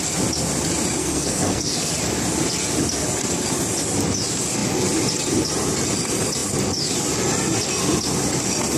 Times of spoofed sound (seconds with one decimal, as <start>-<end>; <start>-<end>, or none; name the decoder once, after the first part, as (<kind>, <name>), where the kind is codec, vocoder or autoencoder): 1.0-1.9 (codec, SNAC)